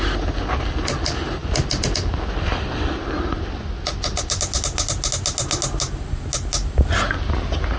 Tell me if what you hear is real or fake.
real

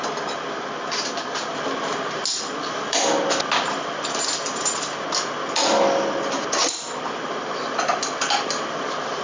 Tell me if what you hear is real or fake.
real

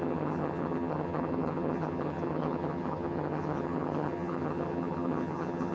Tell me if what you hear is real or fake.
fake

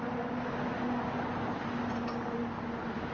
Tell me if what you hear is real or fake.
real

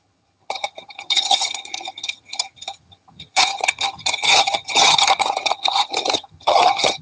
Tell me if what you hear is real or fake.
fake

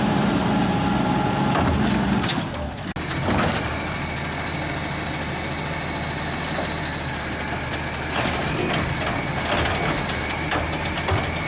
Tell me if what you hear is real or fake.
real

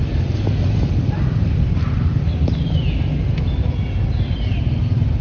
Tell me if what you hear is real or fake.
real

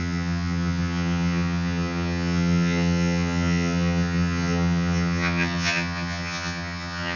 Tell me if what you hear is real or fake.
fake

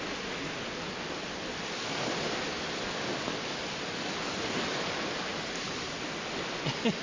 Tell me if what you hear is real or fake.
real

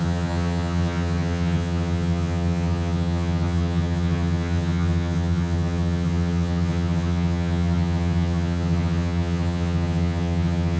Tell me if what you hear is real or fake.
fake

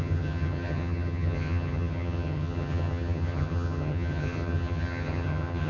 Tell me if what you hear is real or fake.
fake